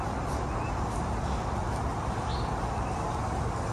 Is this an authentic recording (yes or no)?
yes